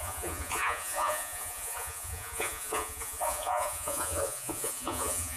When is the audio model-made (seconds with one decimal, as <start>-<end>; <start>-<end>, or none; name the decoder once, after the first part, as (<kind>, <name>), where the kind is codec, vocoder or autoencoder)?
0.0-5.4 (vocoder, Vocos)